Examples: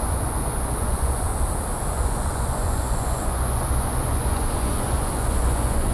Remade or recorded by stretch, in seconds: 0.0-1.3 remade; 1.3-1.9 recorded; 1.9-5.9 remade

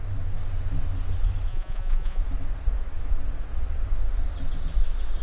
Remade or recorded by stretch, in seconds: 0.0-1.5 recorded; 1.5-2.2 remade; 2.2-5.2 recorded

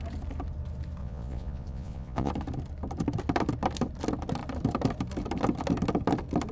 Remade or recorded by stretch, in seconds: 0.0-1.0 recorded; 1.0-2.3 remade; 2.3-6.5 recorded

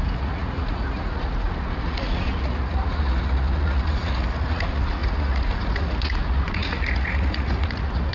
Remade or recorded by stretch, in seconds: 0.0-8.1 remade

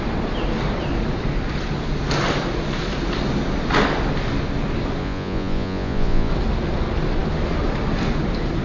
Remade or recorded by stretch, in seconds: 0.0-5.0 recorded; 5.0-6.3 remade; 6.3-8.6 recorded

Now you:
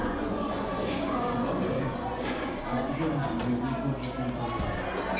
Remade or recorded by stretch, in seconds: 0.0-3.1 remade; 3.1-5.2 recorded